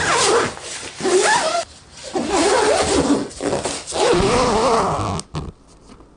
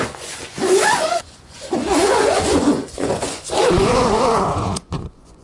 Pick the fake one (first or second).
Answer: second